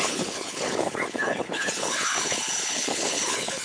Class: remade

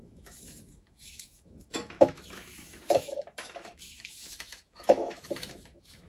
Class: remade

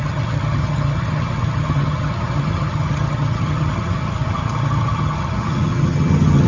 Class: remade